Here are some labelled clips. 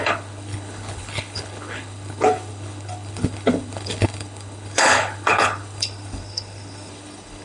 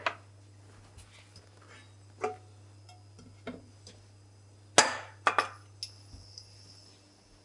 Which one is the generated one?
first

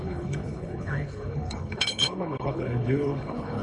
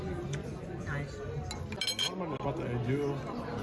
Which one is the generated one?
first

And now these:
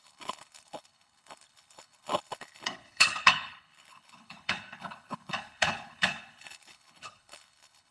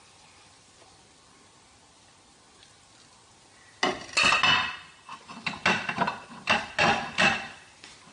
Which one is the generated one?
first